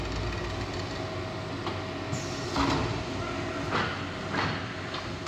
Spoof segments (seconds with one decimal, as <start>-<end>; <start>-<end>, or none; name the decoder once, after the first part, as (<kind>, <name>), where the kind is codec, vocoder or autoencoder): none